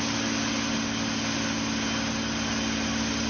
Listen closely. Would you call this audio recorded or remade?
recorded